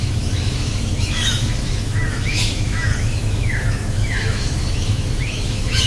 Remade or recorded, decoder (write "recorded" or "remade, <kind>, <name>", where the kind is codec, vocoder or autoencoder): remade, autoencoder, DAC-VAE